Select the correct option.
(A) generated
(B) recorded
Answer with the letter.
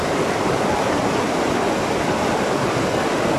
B